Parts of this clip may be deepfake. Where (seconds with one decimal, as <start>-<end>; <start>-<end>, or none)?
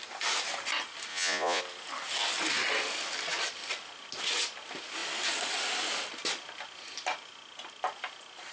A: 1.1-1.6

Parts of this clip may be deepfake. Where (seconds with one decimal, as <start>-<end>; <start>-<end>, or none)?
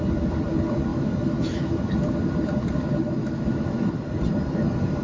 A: 0.9-1.9; 3.2-3.9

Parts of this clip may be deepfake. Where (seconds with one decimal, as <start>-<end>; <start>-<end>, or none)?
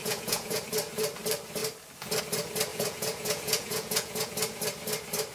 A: 0.0-0.6; 2.7-4.3